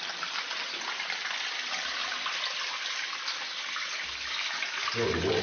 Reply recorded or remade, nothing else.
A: recorded